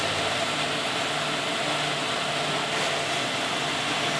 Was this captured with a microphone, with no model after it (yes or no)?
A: yes